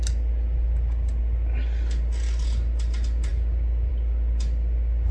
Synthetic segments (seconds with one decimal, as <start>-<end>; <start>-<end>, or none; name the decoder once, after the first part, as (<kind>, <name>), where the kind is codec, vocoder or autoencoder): none